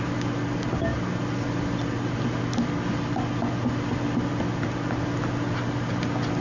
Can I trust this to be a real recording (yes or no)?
yes